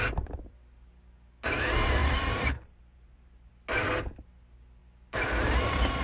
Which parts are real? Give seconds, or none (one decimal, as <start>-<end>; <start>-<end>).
0.0-2.0; 3.5-6.0